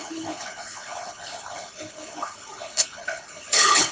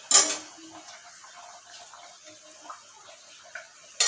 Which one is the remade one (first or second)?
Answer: first